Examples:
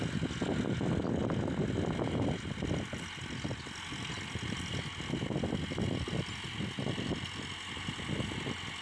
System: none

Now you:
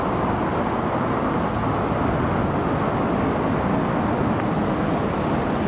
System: none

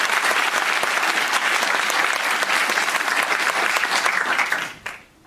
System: none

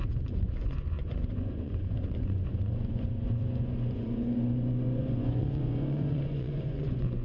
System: vocoder, Vocos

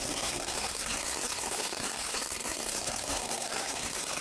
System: codec, SNAC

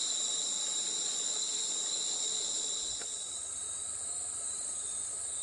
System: none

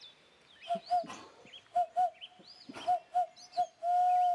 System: none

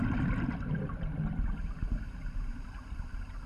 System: none